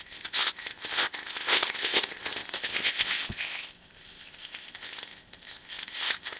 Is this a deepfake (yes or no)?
yes